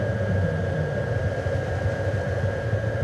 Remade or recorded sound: recorded